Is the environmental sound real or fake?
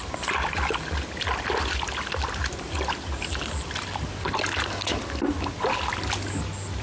real